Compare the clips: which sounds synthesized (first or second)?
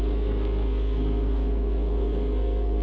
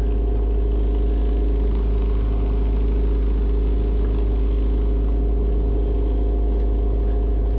first